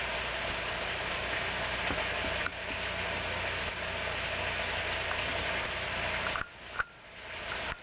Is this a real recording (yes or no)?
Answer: yes